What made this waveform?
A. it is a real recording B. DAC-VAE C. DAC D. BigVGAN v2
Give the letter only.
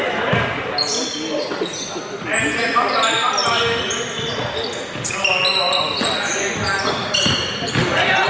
A